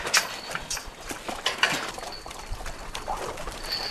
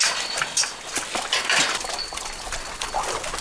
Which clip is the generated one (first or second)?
first